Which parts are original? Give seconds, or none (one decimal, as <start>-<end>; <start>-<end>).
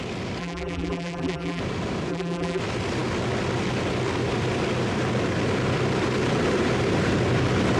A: 0.0-0.4; 1.6-2.1; 2.6-7.8